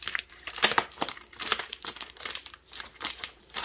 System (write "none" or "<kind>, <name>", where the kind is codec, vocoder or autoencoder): vocoder, BigVGAN v2